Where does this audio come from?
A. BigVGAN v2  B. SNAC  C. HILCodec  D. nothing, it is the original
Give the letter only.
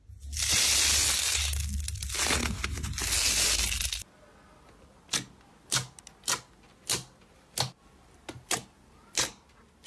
D